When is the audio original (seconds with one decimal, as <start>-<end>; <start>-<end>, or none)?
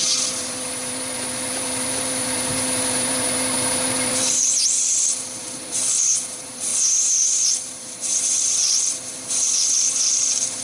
6.7-7.5